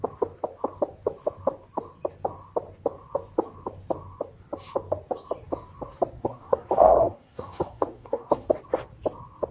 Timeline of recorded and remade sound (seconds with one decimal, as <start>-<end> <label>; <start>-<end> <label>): 0.0-6.2 recorded; 6.2-8.5 remade; 8.5-9.5 recorded